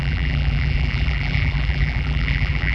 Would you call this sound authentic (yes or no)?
no